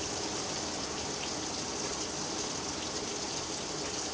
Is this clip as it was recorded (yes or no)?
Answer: yes